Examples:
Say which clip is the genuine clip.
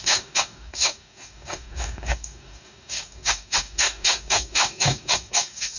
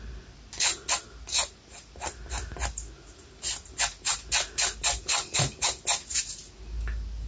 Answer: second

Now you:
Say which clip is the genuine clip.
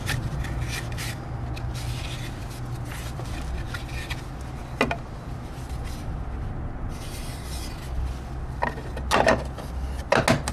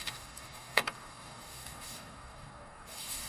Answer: first